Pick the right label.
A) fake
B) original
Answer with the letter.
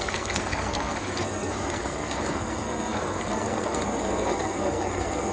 A